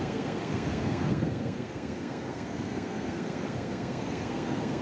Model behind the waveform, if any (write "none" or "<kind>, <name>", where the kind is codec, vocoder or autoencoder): codec, SNAC